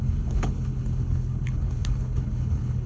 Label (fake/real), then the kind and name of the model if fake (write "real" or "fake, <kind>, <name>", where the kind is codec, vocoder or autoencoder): fake, codec, HILCodec